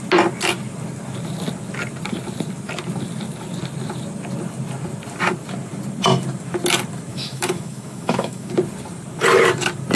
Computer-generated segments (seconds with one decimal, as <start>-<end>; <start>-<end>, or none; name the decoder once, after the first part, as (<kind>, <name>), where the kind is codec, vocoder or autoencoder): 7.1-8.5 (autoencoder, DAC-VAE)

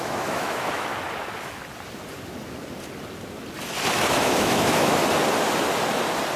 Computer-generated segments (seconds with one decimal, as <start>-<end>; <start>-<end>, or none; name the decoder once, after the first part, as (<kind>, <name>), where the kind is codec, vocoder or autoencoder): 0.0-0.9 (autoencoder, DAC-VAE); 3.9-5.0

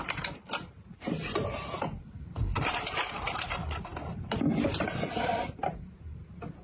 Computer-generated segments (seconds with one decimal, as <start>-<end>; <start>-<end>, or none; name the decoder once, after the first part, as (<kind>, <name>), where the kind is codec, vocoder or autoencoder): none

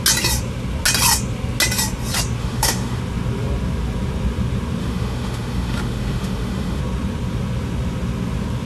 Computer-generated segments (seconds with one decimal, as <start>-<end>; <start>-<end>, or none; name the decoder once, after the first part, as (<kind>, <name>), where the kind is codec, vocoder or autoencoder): 2.4-3.0 (autoencoder, DAC-VAE); 4.8-6.8

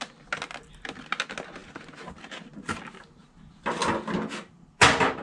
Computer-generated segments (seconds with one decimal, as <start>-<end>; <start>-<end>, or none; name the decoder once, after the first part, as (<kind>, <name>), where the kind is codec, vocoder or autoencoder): none